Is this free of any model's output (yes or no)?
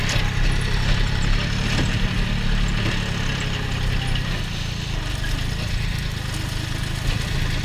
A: yes